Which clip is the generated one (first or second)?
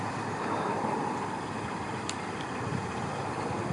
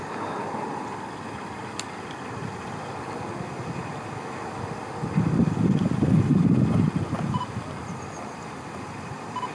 first